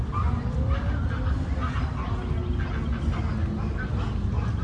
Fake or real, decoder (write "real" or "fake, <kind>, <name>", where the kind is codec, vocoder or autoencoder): real